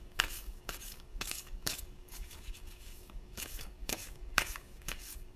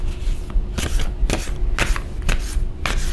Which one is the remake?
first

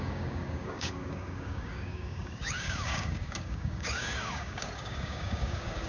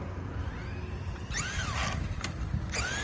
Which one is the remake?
first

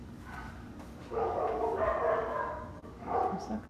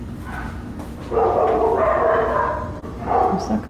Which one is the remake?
first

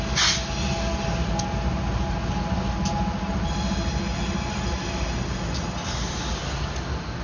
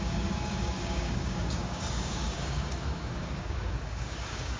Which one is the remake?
second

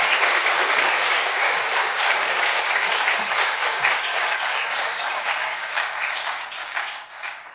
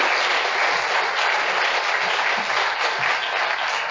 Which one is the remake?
first